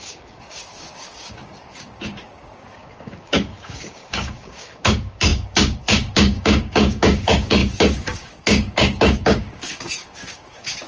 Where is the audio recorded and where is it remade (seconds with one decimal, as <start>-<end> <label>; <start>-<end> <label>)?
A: 0.0-10.9 remade